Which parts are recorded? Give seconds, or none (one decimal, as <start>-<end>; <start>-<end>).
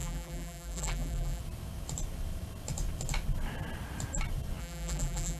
1.4-4.6